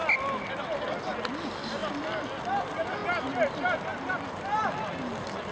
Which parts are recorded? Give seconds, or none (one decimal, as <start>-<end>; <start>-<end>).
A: 0.0-3.0; 4.4-5.5